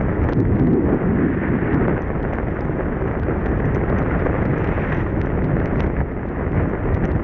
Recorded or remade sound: recorded